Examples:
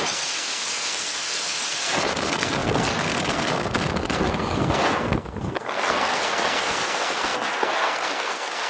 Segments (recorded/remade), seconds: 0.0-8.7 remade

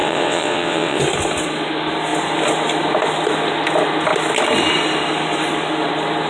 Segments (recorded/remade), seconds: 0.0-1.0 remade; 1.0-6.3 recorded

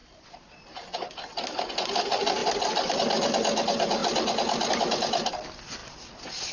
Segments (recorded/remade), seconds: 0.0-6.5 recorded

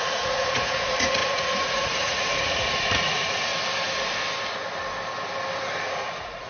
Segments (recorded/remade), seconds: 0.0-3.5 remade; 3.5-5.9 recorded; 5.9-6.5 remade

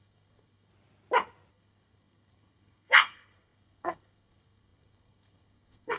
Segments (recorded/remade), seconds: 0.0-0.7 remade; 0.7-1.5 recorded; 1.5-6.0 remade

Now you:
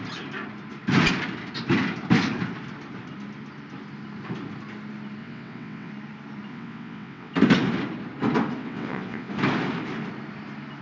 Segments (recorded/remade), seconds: 0.0-5.2 recorded; 5.2-5.9 remade; 5.9-6.5 recorded; 6.5-7.3 remade; 7.3-8.6 recorded; 8.6-9.3 remade; 9.3-10.8 recorded

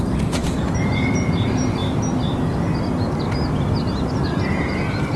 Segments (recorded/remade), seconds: 0.0-5.2 recorded

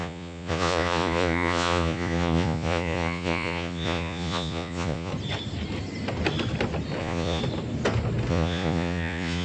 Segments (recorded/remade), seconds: 0.0-5.1 remade; 5.1-7.0 recorded; 7.0-7.4 remade; 7.4-8.3 recorded; 8.3-9.4 remade